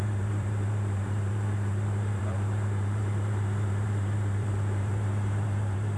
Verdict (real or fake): fake